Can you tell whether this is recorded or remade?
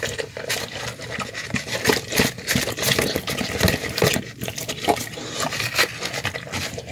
recorded